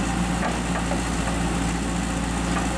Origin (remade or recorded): recorded